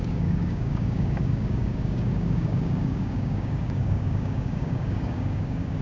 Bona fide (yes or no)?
no